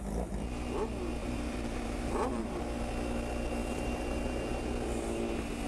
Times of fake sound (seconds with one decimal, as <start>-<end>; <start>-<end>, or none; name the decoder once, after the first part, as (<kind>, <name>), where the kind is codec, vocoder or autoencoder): 1.2-2.6 (vocoder, BigVGAN v2); 3.6-4.6